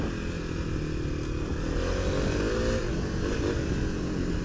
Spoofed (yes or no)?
no